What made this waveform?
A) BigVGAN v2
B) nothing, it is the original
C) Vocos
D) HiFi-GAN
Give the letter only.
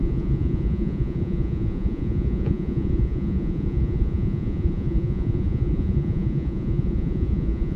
C